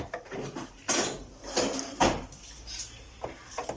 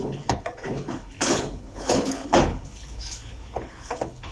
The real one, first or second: first